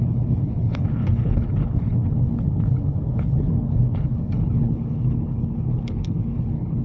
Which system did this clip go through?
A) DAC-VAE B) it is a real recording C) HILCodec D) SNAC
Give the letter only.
C